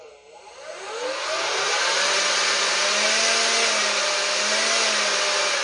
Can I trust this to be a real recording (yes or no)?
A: yes